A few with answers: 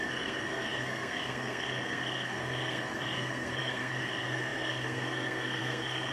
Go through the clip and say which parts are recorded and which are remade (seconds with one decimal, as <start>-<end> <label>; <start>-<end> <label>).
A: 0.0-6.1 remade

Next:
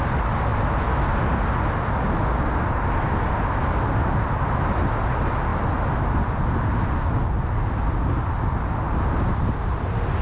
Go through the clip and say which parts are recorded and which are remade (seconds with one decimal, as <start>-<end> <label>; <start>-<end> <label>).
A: 0.0-10.2 recorded

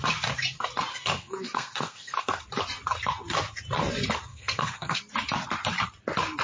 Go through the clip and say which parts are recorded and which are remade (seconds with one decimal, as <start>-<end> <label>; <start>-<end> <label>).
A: 0.0-0.9 recorded; 0.9-2.4 remade; 2.4-4.3 recorded; 4.3-5.0 remade; 5.0-6.4 recorded

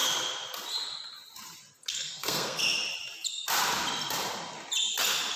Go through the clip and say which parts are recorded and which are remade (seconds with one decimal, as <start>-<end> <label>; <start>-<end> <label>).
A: 0.0-1.9 recorded; 1.9-2.6 remade; 2.6-5.4 recorded

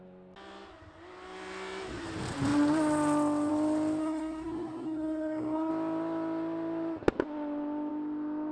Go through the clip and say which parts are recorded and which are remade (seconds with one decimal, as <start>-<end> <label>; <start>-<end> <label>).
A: 0.0-4.0 recorded; 4.0-5.7 remade; 5.7-8.5 recorded

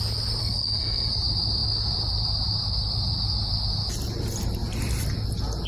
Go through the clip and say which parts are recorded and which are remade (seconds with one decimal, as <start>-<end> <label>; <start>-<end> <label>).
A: 0.0-0.4 recorded; 0.4-1.1 remade; 1.1-5.7 recorded

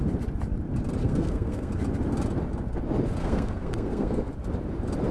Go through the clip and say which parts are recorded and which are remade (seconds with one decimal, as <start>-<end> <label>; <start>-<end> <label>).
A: 0.0-1.0 recorded; 1.0-1.7 remade; 1.7-3.2 recorded; 3.2-4.3 remade; 4.3-5.1 recorded

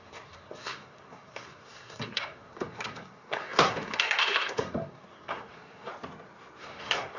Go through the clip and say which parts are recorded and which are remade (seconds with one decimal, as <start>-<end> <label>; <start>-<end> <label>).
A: 0.0-5.9 remade; 5.9-6.6 recorded; 6.6-7.2 remade